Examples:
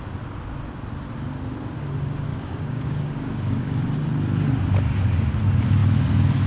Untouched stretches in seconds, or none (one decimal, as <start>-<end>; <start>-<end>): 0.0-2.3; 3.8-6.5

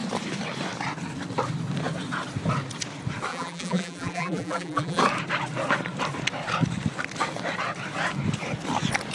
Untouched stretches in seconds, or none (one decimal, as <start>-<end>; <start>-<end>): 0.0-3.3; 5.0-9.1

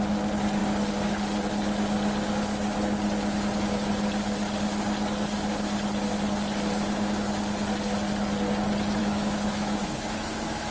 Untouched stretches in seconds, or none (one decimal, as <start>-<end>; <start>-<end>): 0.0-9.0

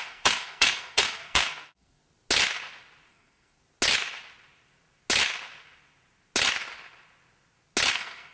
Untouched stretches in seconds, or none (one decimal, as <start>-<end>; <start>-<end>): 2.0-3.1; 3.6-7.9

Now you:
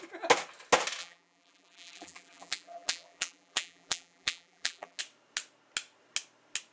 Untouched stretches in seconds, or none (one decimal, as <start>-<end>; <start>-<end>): 0.0-1.0; 5.0-6.7

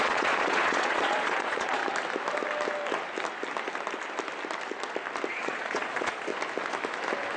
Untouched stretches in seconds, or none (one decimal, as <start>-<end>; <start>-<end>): 1.8-5.3; 6.3-7.4

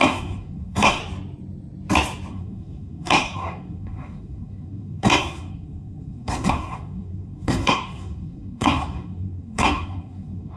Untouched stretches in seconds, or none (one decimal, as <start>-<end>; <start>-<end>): 1.0-2.3